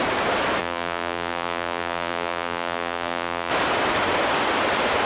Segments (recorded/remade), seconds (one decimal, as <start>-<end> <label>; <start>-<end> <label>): 0.0-0.6 recorded; 0.6-3.5 remade; 3.5-5.1 recorded